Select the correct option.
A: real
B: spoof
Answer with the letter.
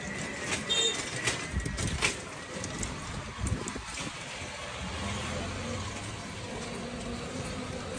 A